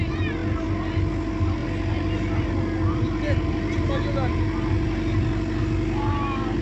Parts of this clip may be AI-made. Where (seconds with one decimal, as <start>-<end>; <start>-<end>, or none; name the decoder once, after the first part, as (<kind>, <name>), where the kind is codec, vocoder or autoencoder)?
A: none